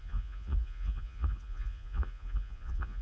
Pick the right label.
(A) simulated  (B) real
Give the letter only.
A